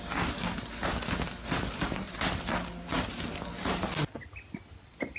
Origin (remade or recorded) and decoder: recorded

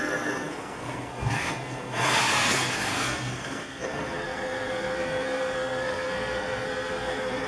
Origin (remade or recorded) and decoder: remade, codec, SNAC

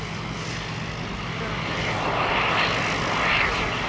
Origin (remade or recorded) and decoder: recorded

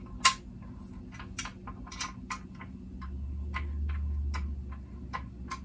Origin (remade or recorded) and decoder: recorded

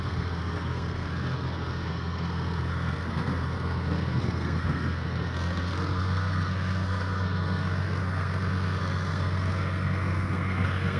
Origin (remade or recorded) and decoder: remade, codec, SNAC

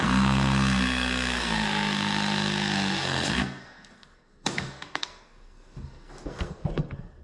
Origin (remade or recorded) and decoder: remade, codec, SNAC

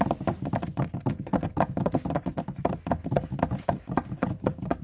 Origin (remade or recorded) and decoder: recorded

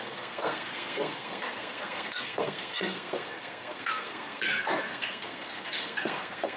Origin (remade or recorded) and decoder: remade, codec, SNAC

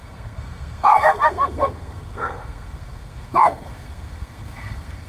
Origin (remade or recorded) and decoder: remade, codec, SNAC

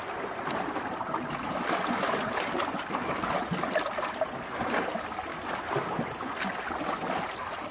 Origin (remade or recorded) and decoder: recorded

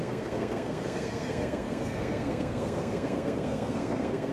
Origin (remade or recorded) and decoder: remade, codec, SNAC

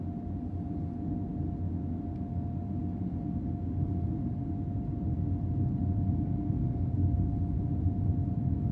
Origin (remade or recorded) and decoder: recorded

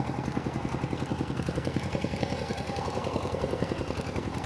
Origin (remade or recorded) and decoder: remade, codec, SNAC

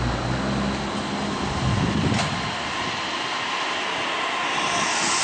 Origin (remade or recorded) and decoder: recorded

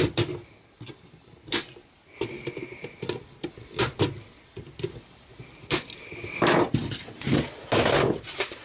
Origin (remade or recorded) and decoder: recorded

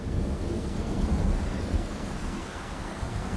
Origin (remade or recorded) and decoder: remade, codec, SNAC